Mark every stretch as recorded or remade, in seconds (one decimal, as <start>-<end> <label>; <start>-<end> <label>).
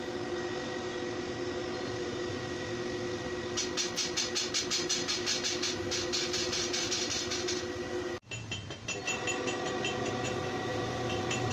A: 0.0-10.7 recorded; 10.7-11.5 remade